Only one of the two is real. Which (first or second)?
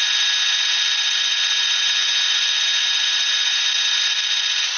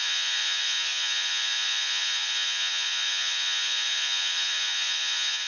first